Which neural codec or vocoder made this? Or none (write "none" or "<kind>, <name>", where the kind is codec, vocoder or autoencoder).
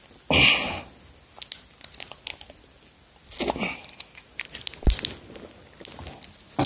none